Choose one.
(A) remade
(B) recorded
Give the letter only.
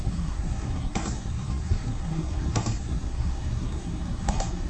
A